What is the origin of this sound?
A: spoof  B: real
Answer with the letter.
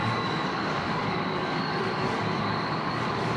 A